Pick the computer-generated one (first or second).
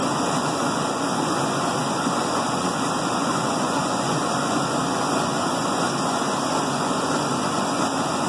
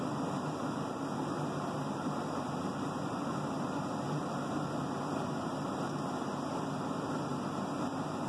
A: first